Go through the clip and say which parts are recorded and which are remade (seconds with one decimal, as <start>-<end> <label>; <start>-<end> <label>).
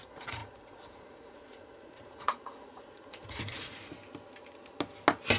0.0-3.8 remade; 3.8-5.4 recorded